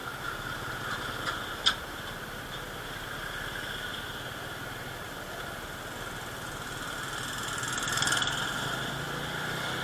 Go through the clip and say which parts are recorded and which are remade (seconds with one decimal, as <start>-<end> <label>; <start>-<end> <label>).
0.0-9.8 recorded